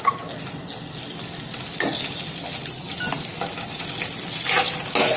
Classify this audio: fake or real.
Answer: real